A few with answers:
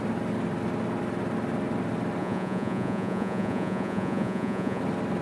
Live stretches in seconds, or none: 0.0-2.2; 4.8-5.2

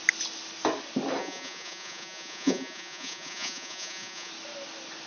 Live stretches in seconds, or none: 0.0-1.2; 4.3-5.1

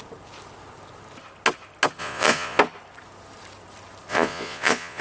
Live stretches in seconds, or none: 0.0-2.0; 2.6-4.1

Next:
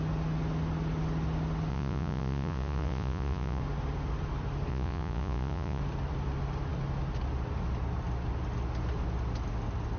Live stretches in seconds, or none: 0.0-1.7; 3.6-4.7; 5.8-10.0